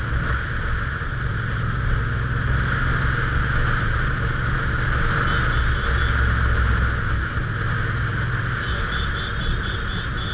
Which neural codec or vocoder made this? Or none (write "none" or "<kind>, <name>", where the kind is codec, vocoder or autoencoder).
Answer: none